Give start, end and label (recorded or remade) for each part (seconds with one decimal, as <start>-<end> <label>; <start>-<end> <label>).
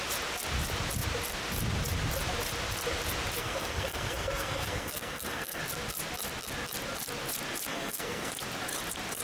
0.0-3.4 recorded; 3.4-5.6 remade; 5.6-7.7 recorded; 7.7-8.3 remade; 8.3-9.2 recorded